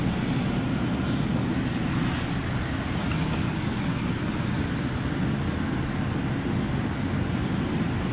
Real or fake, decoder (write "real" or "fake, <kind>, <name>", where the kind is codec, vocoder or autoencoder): real